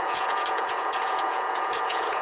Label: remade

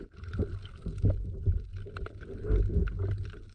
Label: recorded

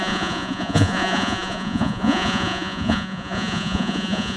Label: remade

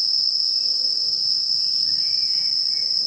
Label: recorded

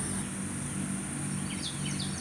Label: recorded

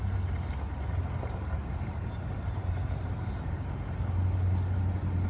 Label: recorded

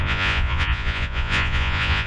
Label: remade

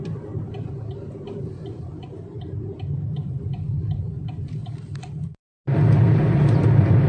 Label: recorded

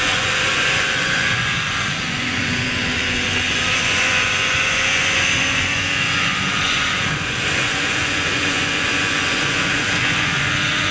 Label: remade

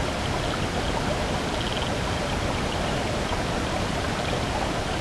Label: recorded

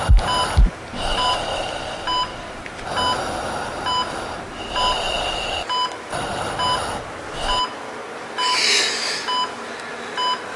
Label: recorded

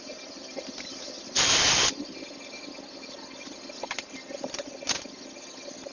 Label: recorded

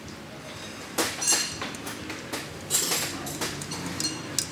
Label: recorded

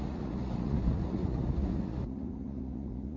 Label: remade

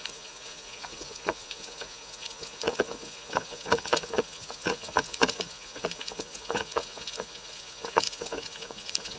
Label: remade